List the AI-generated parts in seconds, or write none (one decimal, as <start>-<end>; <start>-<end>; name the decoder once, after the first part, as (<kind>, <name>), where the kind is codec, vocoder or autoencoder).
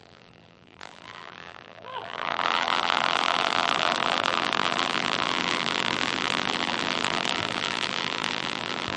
0.0-9.0 (vocoder, BigVGAN v2)